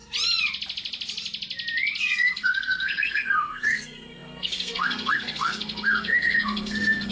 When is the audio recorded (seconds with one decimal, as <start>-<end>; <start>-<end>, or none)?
0.0-2.0